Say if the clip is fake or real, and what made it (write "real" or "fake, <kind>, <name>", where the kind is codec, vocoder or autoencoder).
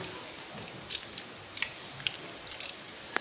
real